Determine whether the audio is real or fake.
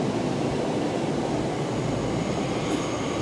real